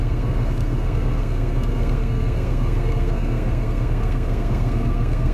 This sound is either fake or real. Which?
fake